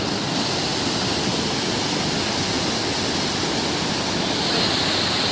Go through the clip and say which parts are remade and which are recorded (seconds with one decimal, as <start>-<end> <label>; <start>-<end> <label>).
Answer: 0.0-5.3 recorded